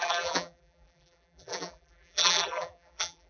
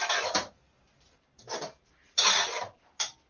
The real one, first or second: second